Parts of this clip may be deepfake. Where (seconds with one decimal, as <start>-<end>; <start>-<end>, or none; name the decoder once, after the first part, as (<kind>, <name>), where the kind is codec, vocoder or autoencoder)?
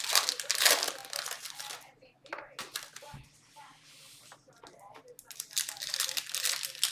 none